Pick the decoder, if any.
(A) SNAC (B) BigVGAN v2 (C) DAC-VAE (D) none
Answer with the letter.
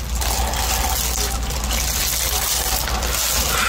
D